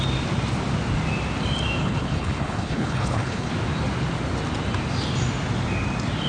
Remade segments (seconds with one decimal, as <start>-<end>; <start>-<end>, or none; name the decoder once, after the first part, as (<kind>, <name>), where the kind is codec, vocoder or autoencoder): 1.8-3.5 (codec, HILCodec)